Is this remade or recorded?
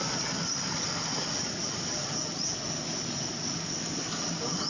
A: recorded